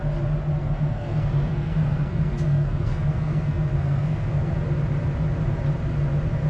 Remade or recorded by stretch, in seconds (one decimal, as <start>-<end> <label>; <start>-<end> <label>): 0.0-0.6 recorded; 0.6-4.5 remade; 4.5-6.5 recorded